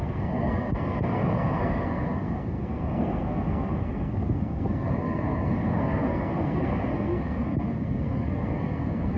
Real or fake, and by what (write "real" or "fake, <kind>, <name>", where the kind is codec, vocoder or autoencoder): fake, codec, SNAC